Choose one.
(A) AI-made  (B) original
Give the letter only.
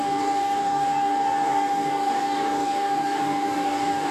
A